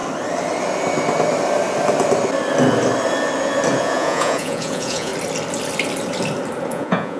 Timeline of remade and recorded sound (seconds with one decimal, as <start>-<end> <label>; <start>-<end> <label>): 0.0-3.8 recorded; 3.8-5.1 remade; 5.1-6.7 recorded; 6.7-7.2 remade

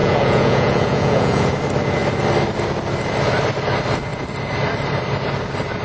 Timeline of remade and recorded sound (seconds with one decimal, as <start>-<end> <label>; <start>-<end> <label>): 0.0-1.5 remade; 1.5-5.8 recorded

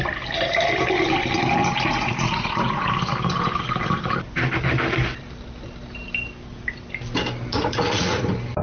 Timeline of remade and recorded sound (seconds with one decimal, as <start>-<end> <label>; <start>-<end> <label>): 0.0-1.9 recorded; 1.9-2.9 remade; 2.9-7.5 recorded; 7.5-8.2 remade; 8.2-8.6 recorded

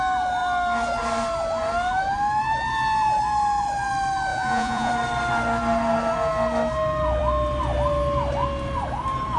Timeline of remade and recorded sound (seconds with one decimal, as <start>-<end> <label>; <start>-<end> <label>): 0.0-4.3 recorded; 4.3-4.9 remade; 4.9-9.4 recorded

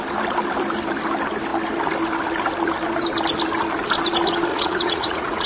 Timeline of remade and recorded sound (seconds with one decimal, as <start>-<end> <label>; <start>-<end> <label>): 0.0-4.5 recorded; 4.5-5.5 remade

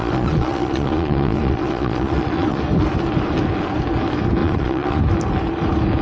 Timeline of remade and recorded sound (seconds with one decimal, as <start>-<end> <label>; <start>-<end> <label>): 0.0-2.6 remade; 2.6-4.4 recorded; 4.4-5.0 remade; 5.0-6.0 recorded

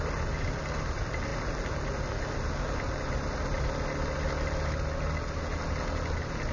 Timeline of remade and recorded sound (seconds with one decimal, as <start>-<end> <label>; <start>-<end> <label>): 0.0-6.5 recorded

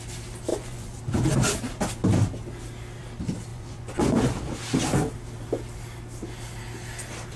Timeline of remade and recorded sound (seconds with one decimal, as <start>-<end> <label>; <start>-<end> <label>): 0.0-0.5 recorded; 0.5-1.0 remade; 1.0-3.5 recorded; 3.5-4.2 remade; 4.2-7.4 recorded